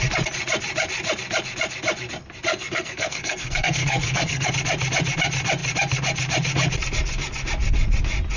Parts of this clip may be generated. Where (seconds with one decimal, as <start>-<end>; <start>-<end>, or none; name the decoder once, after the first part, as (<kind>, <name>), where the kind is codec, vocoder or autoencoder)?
2.5-4.5 (codec, SNAC)